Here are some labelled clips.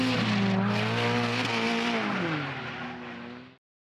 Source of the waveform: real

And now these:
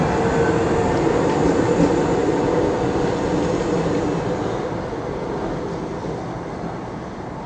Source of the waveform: real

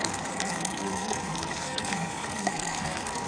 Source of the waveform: fake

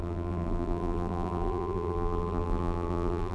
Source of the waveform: fake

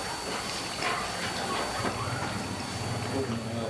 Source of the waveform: real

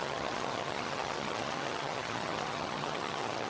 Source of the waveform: fake